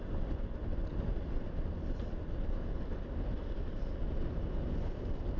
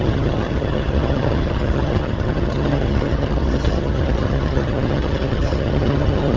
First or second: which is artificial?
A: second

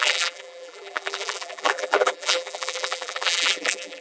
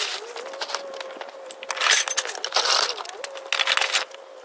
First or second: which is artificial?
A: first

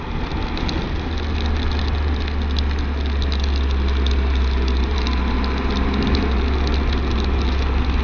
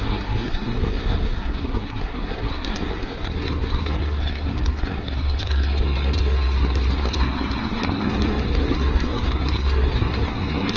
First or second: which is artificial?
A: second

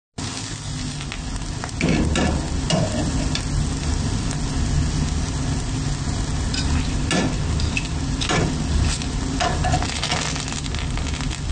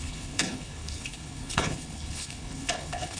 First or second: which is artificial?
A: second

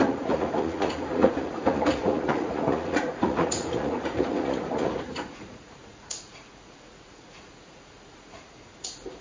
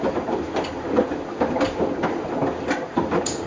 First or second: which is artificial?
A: first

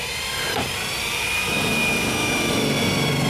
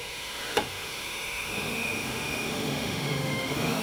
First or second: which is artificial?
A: second